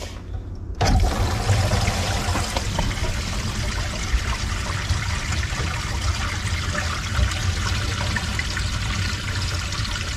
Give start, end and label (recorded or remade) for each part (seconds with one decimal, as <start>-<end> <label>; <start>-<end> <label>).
0.0-0.4 recorded; 0.4-2.2 remade; 2.2-3.0 recorded; 3.0-5.6 remade; 5.6-10.2 recorded